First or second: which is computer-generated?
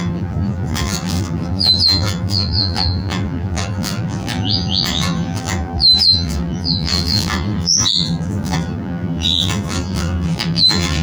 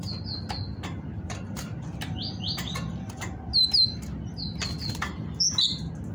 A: first